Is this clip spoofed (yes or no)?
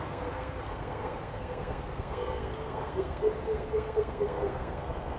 yes